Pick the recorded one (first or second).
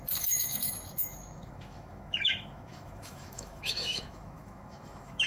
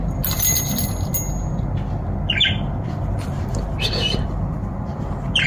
second